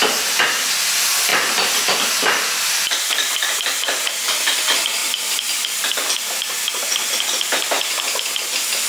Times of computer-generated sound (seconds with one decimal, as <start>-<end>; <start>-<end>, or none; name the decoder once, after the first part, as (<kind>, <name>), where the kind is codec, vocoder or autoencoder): 1.3-4.4 (vocoder, BigVGAN v2); 5.0-8.3